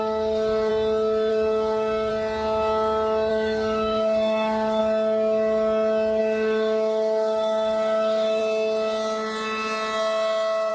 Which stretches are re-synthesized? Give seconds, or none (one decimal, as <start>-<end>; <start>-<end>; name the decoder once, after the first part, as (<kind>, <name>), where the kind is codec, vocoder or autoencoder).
0.0-0.7 (codec, DAC); 1.3-2.1; 3.3-4.8; 6.2-8.4